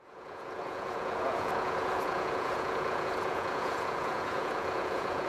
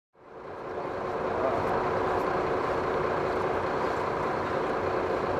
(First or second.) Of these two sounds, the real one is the second